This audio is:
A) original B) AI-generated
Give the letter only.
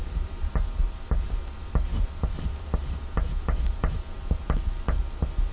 B